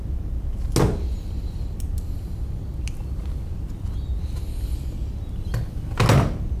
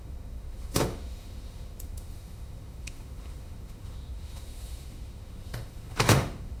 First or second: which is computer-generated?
second